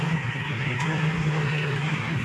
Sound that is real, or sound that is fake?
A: fake